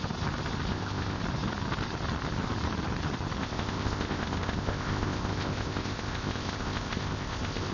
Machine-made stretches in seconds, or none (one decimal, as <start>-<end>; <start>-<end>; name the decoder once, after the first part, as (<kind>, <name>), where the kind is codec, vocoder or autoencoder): 0.7-1.2 (codec, ZipCodec); 3.4-7.7